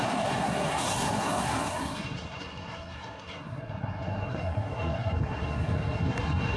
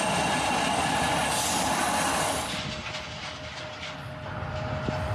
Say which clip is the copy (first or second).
first